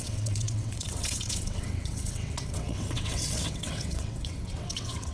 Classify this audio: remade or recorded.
remade